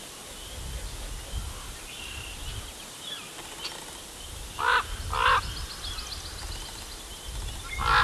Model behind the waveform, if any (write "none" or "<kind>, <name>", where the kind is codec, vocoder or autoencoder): none